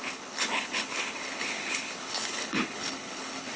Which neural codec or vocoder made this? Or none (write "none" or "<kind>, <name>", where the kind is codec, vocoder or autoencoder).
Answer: codec, HILCodec